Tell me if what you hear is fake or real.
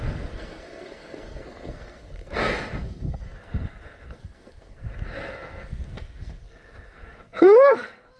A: fake